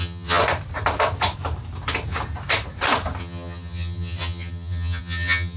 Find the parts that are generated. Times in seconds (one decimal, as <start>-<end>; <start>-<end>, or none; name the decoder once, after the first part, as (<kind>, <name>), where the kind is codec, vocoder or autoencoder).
0.0-0.4 (vocoder, HiFi-GAN); 3.2-5.6